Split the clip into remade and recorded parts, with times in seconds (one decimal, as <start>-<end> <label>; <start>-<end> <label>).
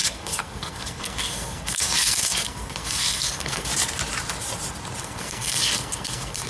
0.0-3.7 remade; 3.7-5.0 recorded; 5.0-6.5 remade